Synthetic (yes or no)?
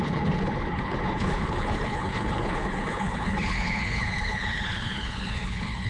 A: yes